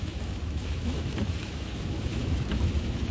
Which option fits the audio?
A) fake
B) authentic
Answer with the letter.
A